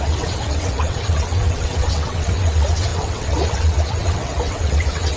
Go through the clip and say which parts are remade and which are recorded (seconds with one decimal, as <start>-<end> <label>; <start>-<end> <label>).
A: 0.0-5.2 remade